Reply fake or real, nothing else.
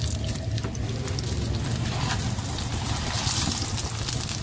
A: real